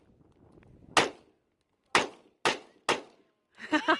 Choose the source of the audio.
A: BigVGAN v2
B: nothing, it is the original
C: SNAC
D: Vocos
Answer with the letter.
B